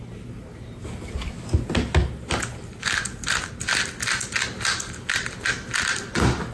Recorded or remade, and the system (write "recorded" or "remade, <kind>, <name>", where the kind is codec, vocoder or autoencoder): recorded